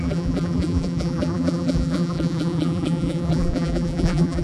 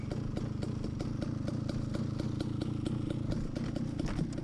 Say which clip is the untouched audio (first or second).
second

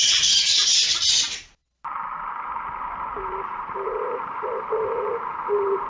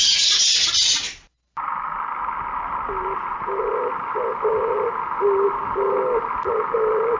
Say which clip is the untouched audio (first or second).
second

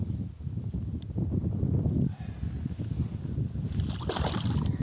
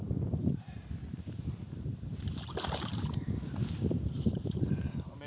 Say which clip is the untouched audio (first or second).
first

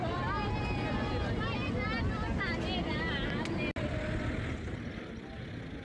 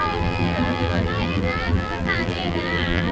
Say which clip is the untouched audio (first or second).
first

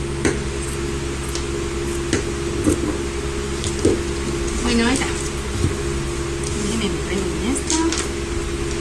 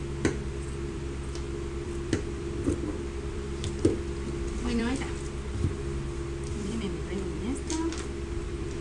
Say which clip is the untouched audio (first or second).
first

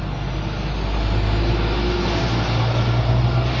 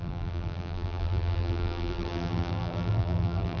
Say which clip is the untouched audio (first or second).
first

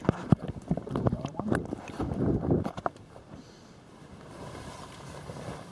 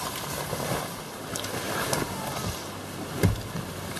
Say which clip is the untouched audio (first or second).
second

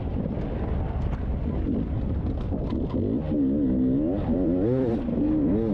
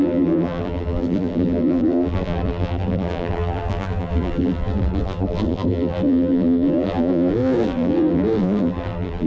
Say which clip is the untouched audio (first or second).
first